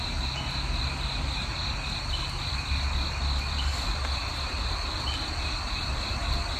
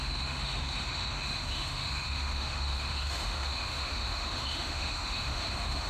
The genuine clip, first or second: first